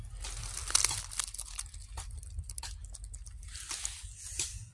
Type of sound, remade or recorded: recorded